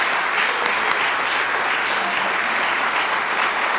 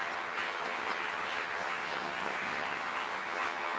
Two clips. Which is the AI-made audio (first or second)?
second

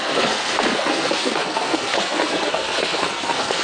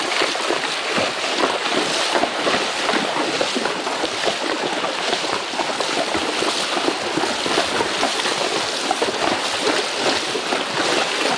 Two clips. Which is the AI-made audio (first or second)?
first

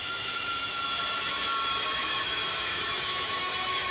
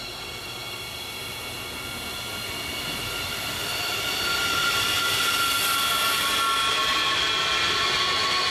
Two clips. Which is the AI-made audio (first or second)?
first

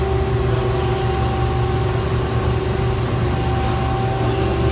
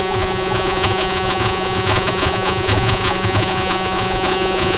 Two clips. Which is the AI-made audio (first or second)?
second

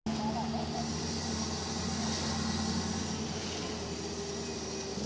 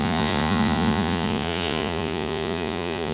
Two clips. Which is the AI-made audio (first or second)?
second